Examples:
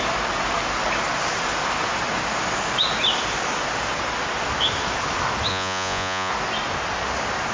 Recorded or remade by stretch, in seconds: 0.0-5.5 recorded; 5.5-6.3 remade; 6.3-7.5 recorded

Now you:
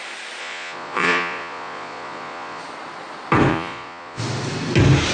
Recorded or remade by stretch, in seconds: 0.0-0.4 recorded; 0.4-2.6 remade; 2.6-3.5 recorded; 3.5-4.2 remade; 4.2-5.1 recorded

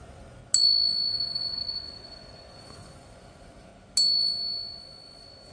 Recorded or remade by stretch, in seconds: 0.0-0.4 remade; 0.4-1.1 recorded; 1.1-3.7 remade; 3.7-5.5 recorded